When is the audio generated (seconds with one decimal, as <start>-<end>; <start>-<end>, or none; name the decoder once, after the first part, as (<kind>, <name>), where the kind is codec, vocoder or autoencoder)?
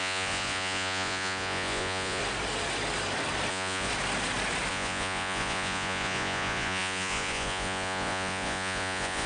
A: 0.0-2.2 (vocoder, Vocos); 3.5-3.9; 4.7-9.3